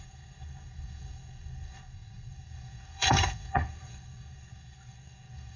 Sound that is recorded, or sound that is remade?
remade